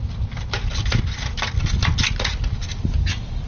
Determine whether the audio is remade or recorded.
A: recorded